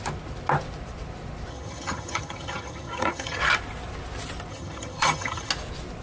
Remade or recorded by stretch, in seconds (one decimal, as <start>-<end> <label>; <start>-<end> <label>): 0.0-1.5 recorded; 1.5-3.4 remade; 3.4-4.5 recorded; 4.5-5.5 remade; 5.5-6.0 recorded